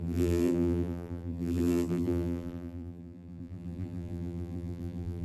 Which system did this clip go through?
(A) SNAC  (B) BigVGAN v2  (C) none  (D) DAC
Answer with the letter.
B